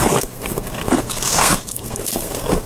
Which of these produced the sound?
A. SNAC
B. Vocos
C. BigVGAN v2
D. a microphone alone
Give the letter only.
A